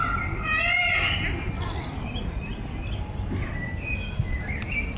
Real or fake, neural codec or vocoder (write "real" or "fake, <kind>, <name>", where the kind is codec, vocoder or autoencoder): real